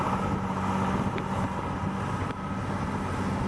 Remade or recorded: recorded